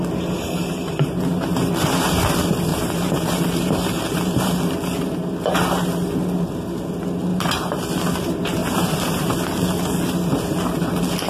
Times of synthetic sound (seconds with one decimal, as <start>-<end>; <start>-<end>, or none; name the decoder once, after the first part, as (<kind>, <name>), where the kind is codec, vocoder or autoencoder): 2.7-4.5 (vocoder, BigVGAN v2); 7.3-7.8; 8.6-9.4